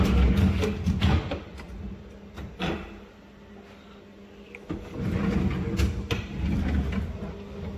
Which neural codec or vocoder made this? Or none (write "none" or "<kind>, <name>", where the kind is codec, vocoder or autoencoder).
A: none